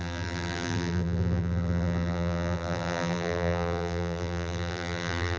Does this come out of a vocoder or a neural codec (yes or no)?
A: yes